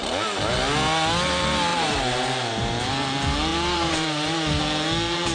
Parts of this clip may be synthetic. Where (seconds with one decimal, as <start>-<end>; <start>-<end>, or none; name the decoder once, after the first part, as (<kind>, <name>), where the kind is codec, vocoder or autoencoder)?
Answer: 1.7-2.9 (vocoder, BigVGAN v2); 3.5-4.6